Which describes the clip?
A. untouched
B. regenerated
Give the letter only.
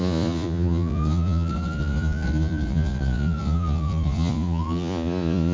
B